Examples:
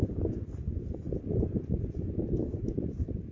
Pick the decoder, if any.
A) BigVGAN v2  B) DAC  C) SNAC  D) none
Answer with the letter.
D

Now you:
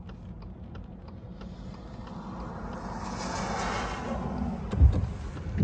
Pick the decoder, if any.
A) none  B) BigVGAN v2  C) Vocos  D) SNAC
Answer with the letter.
A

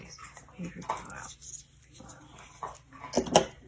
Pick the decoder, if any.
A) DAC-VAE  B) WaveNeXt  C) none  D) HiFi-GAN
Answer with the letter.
C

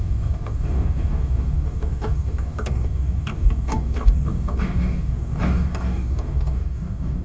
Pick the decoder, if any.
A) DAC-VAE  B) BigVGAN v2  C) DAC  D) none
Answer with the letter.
C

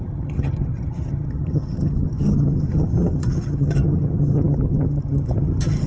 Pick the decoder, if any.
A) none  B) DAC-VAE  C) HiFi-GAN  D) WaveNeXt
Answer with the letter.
C